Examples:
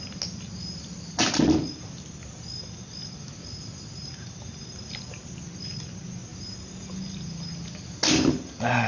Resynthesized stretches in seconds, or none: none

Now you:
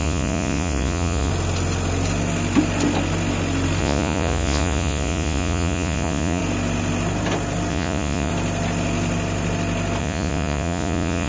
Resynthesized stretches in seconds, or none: 0.0-1.3; 3.8-6.4; 7.7-8.3; 10.0-11.3

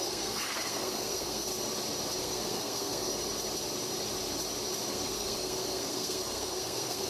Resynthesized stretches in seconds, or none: 0.0-1.5; 2.2-3.2; 4.9-7.1